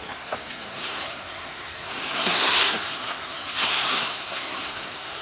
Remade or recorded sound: remade